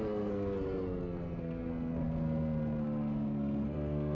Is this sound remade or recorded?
remade